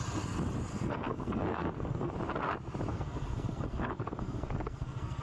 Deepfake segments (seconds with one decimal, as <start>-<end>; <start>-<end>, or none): 0.7-2.1; 2.9-5.2